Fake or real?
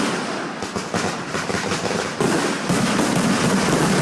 real